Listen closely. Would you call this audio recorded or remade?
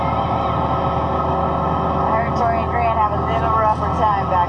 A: recorded